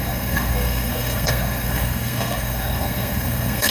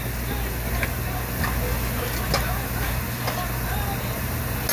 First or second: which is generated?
first